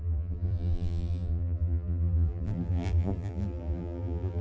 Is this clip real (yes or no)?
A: no